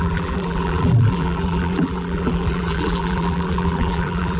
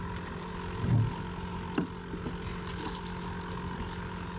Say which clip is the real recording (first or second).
second